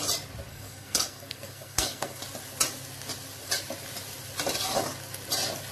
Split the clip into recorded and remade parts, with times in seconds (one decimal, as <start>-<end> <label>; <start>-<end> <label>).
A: 0.0-0.5 recorded; 0.5-2.2 remade; 2.2-5.7 recorded